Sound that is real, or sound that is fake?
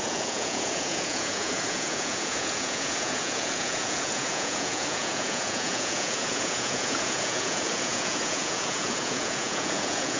fake